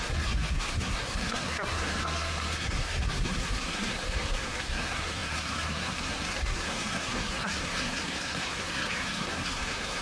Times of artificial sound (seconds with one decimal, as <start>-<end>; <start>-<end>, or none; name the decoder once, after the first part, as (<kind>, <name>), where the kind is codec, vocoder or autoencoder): 0.0-10.0 (codec, SNAC)

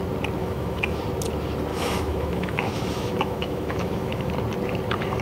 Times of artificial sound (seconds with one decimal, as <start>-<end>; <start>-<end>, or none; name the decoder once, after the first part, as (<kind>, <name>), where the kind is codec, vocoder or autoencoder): 0.4-1.0 (autoencoder, DAC-VAE); 1.7-4.3

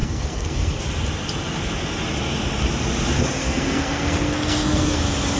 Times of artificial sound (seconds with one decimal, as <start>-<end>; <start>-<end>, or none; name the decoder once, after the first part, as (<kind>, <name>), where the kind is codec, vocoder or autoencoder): 0.0-0.8 (codec, SNAC); 3.4-5.0

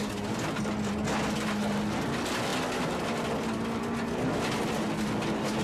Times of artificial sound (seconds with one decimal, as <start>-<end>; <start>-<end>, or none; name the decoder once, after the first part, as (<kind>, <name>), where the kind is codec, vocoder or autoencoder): none

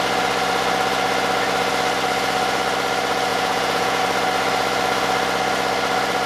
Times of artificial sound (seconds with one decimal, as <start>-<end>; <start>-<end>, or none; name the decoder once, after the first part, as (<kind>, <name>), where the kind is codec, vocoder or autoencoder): 3.3-4.0 (vocoder, Vocos)

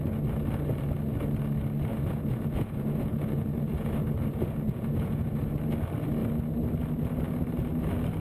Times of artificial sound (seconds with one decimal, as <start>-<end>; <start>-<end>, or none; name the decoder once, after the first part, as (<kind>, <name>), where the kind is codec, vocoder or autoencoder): 1.9-5.5 (vocoder, Vocos)